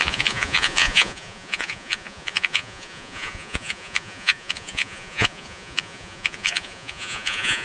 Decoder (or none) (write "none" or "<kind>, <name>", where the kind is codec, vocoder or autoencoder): vocoder, Vocos